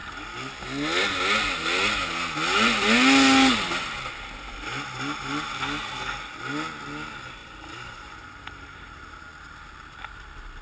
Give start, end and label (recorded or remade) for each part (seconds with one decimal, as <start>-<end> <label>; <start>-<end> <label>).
0.0-7.4 recorded; 7.4-9.2 remade; 9.2-10.6 recorded